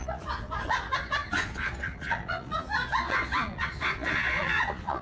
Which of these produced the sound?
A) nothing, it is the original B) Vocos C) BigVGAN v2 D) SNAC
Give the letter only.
B